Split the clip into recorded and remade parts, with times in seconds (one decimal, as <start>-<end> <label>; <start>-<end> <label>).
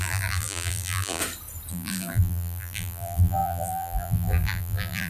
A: 0.0-1.2 remade; 1.2-1.7 recorded; 1.7-5.1 remade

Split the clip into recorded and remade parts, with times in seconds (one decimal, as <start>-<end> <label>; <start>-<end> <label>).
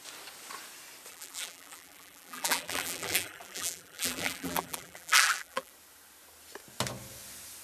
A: 0.0-1.1 recorded; 1.1-5.7 remade; 5.7-7.6 recorded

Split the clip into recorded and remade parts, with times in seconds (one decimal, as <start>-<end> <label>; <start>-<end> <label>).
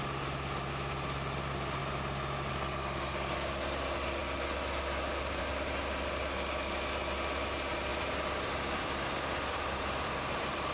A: 0.0-7.9 recorded; 7.9-10.7 remade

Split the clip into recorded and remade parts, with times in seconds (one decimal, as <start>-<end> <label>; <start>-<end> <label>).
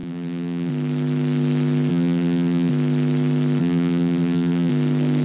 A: 0.0-0.7 remade; 0.7-1.9 recorded; 1.9-2.7 remade; 2.7-3.6 recorded; 3.6-4.7 remade; 4.7-5.2 recorded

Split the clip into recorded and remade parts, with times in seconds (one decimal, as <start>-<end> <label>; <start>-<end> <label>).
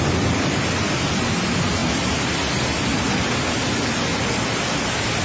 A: 0.0-5.2 recorded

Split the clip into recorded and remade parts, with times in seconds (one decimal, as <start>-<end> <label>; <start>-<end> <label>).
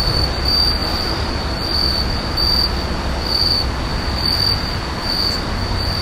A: 0.0-0.8 recorded; 0.8-1.4 remade; 1.4-6.0 recorded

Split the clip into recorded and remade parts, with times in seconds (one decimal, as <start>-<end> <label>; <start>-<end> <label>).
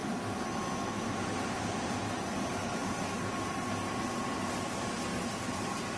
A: 0.0-5.1 recorded; 5.1-6.0 remade